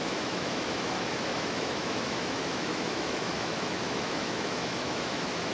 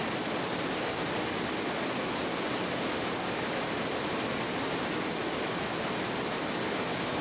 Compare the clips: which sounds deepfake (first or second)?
first